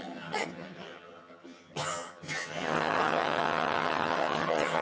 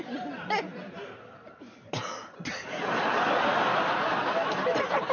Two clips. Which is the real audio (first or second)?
second